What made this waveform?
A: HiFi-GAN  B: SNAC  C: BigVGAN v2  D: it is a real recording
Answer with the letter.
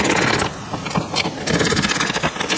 D